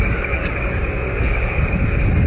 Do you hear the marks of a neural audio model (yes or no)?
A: yes